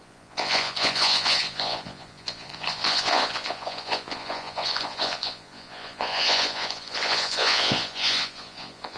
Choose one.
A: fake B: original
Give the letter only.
A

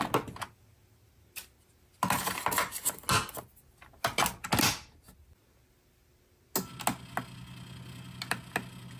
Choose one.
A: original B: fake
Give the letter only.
A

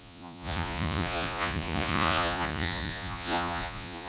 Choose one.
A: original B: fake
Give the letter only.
B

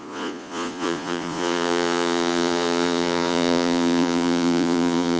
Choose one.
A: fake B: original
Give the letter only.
A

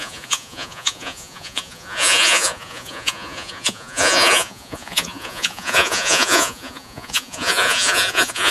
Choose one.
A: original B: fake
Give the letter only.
B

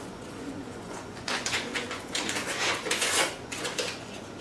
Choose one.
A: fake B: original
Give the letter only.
A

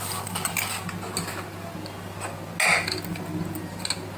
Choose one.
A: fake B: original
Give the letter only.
B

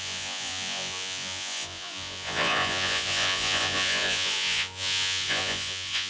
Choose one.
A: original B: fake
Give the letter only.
B